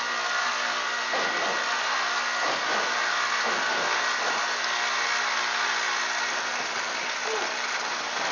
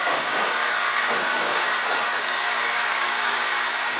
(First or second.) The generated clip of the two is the second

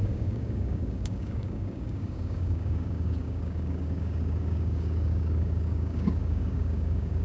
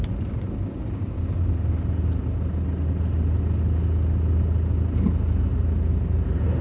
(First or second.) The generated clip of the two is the first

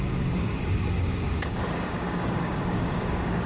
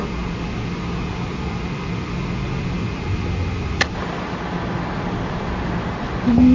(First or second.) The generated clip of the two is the first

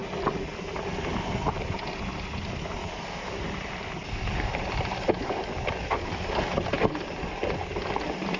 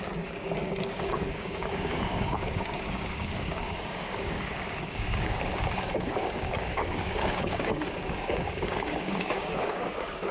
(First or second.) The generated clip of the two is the second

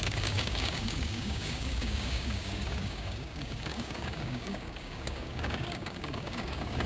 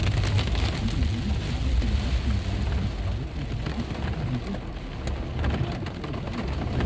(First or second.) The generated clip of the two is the first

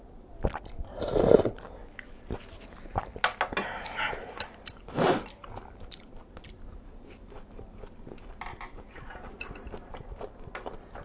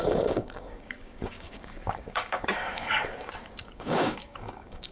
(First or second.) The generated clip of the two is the second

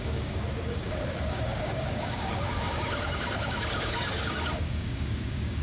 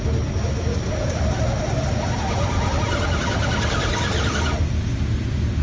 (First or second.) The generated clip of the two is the first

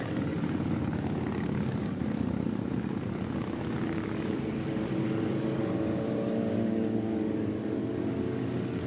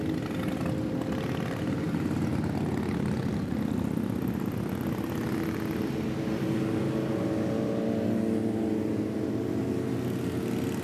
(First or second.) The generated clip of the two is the first